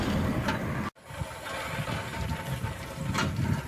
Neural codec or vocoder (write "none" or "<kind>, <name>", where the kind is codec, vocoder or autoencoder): none